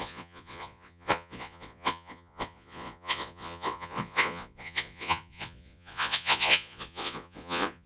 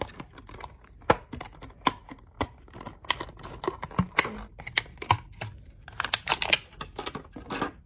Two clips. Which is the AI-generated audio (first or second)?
first